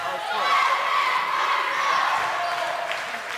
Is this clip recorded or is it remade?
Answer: recorded